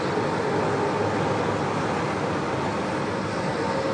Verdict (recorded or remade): recorded